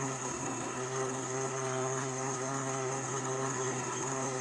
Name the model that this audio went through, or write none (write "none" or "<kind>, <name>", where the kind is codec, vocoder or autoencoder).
codec, SNAC